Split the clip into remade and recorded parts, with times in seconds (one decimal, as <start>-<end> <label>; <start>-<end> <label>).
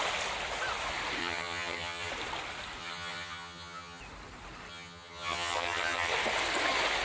0.0-1.2 recorded; 1.2-2.1 remade; 2.1-2.8 recorded; 2.8-4.0 remade; 4.0-4.7 recorded; 4.7-6.1 remade; 6.1-7.0 recorded